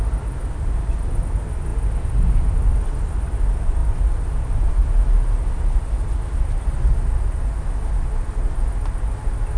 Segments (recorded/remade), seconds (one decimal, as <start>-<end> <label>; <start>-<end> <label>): 0.0-9.6 recorded